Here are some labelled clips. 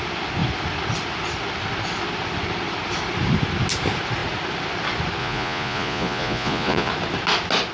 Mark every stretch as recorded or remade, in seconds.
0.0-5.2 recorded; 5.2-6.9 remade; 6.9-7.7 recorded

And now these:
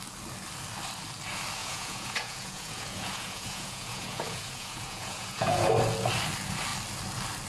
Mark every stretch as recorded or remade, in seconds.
0.0-1.6 recorded; 1.6-5.7 remade; 5.7-7.5 recorded

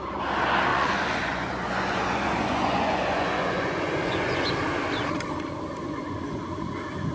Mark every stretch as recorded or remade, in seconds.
0.0-0.7 recorded; 0.7-4.5 remade; 4.5-5.8 recorded; 5.8-6.5 remade; 6.5-7.1 recorded

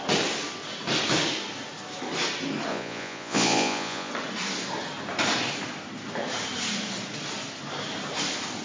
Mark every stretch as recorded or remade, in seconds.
0.0-2.7 recorded; 2.7-4.1 remade; 4.1-8.6 recorded

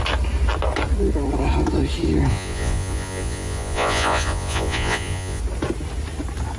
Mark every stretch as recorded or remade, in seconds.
0.0-2.3 recorded; 2.3-5.4 remade; 5.4-6.6 recorded